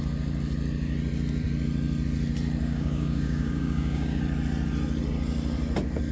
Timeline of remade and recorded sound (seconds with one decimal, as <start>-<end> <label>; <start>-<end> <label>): 0.0-2.6 recorded; 2.6-4.2 remade; 4.2-6.1 recorded